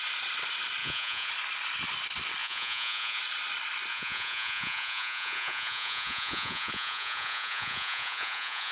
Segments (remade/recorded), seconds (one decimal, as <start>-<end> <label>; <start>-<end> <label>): 0.0-0.8 recorded; 0.8-1.3 remade; 1.3-2.4 recorded; 2.4-3.2 remade; 3.2-3.9 recorded; 3.9-8.7 remade